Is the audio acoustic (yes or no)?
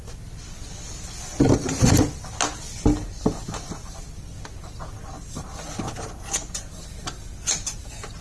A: yes